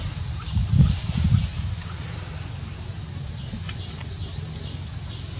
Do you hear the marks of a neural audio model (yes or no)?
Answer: no